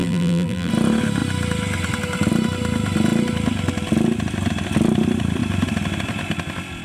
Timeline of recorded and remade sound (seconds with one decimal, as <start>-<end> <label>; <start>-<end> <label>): 0.0-0.7 remade; 0.7-6.8 recorded